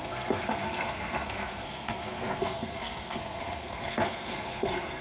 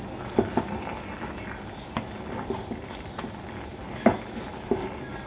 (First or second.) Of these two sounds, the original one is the second